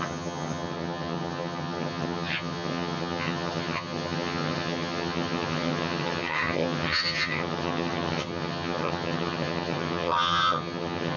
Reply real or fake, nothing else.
fake